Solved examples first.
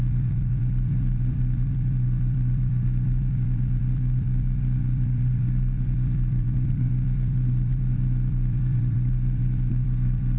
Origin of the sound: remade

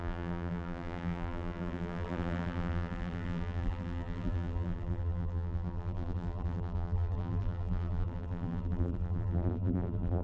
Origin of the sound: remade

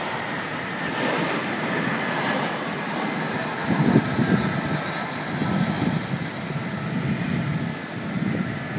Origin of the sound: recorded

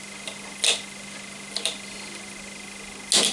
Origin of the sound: recorded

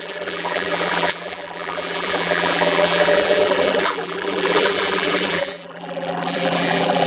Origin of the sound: remade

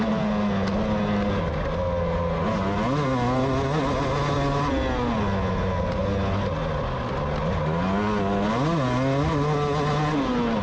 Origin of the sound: recorded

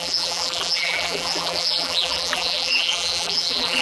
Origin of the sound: remade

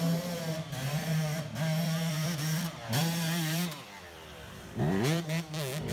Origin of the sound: remade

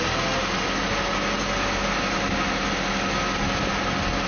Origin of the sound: recorded